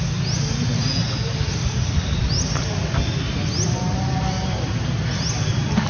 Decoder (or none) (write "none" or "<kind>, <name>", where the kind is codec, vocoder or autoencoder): none